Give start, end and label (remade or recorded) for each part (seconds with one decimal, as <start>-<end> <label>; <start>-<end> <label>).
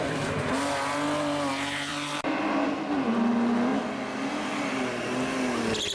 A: 0.0-1.9 recorded; 1.9-2.7 remade; 2.7-5.9 recorded